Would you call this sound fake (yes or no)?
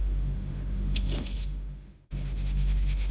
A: yes